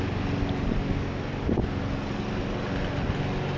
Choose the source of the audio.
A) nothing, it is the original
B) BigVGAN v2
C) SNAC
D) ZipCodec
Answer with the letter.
A